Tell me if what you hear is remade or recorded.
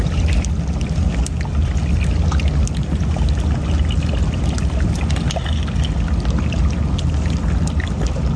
recorded